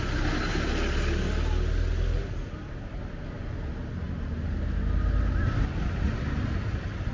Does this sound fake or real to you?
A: real